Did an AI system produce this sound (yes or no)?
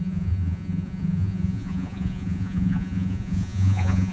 yes